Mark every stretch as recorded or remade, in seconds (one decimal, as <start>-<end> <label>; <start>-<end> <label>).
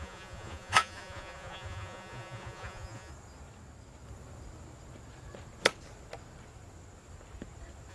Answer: 0.0-3.1 remade; 3.1-7.9 recorded